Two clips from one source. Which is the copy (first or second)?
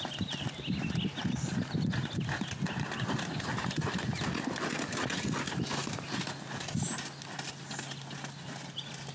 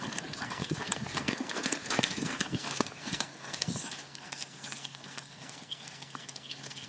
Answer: second